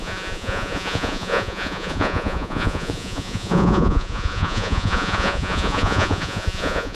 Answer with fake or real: fake